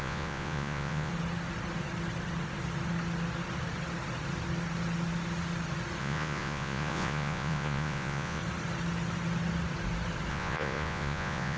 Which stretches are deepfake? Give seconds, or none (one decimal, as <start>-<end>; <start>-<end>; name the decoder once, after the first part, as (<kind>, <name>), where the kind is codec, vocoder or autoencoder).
0.0-1.1 (vocoder, Vocos); 6.0-8.4; 10.3-11.6

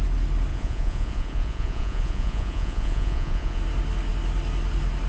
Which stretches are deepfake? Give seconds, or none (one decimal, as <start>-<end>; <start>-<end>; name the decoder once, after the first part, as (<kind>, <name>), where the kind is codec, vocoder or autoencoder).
0.5-3.6 (vocoder, Vocos)

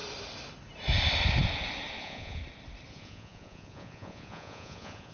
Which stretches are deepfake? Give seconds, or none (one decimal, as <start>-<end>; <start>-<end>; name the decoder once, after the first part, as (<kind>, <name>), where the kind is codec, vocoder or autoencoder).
2.0-2.4 (vocoder, Vocos); 2.9-5.1

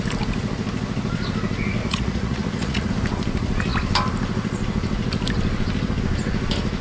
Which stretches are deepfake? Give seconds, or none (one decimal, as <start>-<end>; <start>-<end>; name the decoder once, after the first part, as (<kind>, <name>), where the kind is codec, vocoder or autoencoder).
1.8-2.9 (vocoder, Vocos)

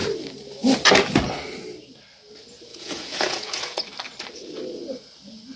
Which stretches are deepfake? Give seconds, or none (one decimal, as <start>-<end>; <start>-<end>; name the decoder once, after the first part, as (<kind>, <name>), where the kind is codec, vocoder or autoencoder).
2.7-3.8 (vocoder, Vocos)